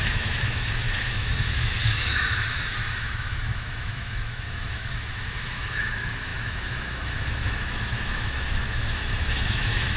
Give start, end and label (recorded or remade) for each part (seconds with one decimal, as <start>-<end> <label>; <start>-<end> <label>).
0.0-10.0 remade